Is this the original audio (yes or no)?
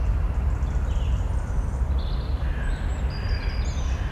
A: yes